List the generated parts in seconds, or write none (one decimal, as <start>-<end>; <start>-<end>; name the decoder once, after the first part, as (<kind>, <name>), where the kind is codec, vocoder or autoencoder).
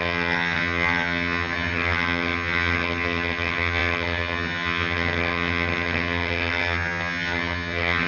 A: 0.0-8.1 (vocoder, HiFi-GAN)